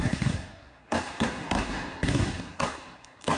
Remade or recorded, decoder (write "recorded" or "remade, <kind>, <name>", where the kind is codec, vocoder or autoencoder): remade, codec, SNAC